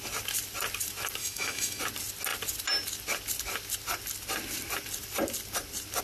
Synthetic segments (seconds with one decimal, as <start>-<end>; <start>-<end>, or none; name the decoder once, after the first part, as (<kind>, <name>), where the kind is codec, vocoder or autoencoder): 1.2-1.8 (autoencoder, DAC-VAE)